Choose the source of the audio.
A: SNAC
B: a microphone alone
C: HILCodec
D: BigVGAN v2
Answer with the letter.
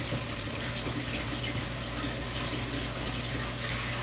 B